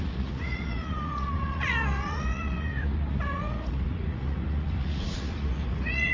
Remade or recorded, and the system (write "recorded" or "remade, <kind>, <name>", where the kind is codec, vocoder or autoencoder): remade, vocoder, Vocos